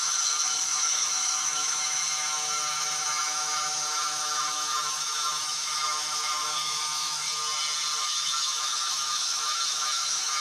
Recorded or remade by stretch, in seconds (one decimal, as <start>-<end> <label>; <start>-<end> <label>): 0.0-7.4 remade; 7.4-8.0 recorded; 8.0-10.4 remade